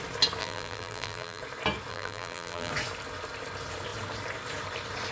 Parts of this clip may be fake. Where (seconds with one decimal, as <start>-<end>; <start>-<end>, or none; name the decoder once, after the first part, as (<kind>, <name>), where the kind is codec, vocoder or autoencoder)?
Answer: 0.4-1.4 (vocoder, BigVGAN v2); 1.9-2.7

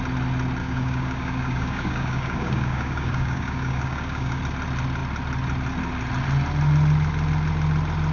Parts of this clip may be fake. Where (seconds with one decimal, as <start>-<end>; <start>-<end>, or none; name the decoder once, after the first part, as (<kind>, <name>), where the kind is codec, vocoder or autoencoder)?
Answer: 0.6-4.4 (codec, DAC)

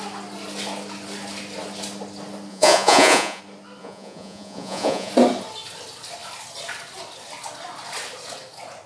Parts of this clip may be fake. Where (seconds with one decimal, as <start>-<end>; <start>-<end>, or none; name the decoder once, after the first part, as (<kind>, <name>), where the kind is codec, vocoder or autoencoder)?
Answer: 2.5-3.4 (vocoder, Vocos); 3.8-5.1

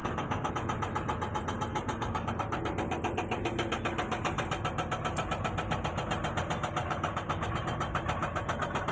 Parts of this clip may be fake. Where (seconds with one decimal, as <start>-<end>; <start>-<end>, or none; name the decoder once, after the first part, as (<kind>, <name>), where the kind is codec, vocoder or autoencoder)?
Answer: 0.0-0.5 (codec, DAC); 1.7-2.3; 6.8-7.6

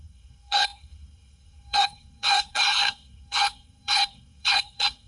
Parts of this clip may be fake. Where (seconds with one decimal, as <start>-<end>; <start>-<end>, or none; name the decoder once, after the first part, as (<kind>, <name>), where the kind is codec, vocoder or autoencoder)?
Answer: 0.0-5.1 (codec, SNAC)